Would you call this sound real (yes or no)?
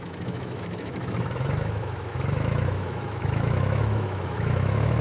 no